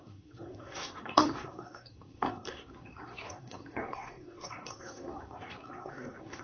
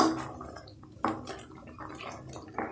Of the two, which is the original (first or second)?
second